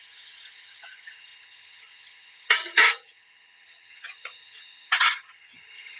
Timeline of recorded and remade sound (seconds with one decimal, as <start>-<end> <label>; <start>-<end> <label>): 0.0-6.0 remade